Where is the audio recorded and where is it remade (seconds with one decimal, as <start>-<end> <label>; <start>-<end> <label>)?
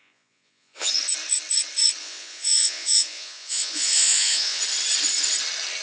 0.0-0.9 remade; 0.9-2.0 recorded; 2.0-4.6 remade; 4.6-5.8 recorded